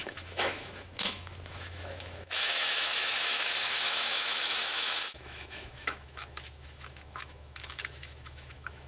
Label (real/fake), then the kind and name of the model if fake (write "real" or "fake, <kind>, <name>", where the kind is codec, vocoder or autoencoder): fake, autoencoder, DAC-VAE